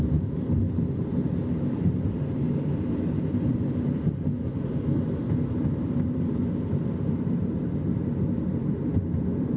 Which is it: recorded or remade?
remade